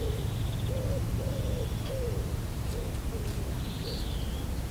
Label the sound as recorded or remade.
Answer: remade